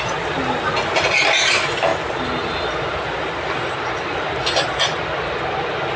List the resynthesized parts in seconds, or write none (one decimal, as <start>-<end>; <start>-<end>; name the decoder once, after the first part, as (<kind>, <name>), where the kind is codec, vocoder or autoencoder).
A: none